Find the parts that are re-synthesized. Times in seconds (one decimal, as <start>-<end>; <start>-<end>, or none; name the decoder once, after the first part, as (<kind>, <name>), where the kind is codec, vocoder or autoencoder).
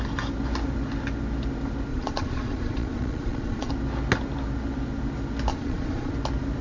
1.9-3.7 (vocoder, Vocos); 5.5-6.1